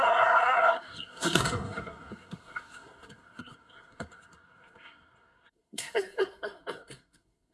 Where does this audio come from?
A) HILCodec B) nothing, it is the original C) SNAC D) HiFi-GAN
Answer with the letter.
C